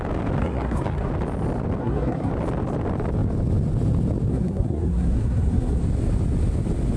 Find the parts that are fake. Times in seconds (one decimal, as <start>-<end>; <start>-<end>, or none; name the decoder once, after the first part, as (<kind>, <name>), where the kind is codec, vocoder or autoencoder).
0.4-1.1 (codec, SNAC); 1.8-2.3; 4.3-5.8